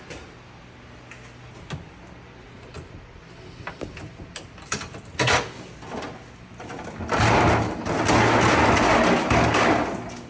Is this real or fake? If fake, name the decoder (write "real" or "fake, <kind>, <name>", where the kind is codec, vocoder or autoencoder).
real